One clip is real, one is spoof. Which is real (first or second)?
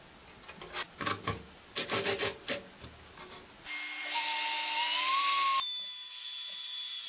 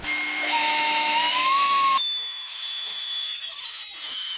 first